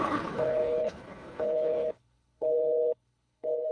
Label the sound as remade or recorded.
remade